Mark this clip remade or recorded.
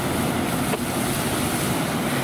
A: recorded